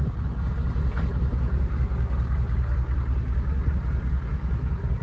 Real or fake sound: real